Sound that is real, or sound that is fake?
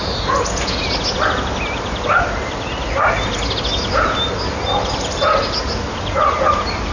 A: real